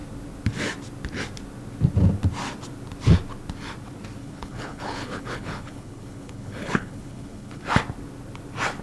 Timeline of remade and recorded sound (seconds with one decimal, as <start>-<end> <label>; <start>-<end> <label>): 0.0-4.2 recorded; 4.2-7.6 remade; 7.6-8.8 recorded